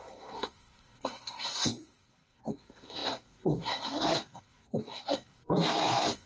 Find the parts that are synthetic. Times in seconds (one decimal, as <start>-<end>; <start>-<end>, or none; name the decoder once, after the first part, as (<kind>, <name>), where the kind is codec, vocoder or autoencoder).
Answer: 0.0-6.3 (codec, SNAC)